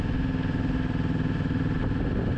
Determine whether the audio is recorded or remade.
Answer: recorded